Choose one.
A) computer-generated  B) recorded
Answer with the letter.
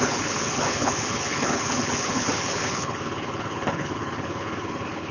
A